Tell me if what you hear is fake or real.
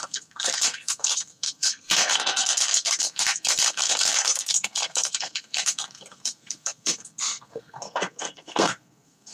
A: fake